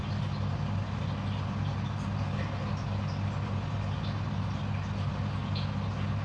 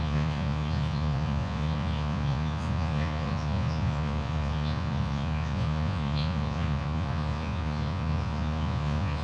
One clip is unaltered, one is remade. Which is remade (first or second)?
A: second